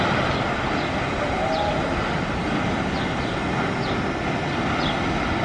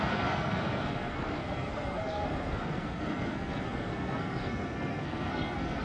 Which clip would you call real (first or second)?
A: first